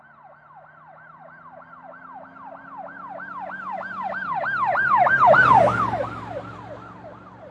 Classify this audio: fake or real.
real